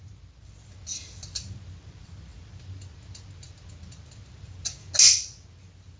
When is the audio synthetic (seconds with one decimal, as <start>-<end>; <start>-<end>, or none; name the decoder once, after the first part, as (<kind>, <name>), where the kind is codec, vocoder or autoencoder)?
none